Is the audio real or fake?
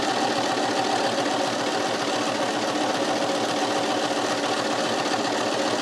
real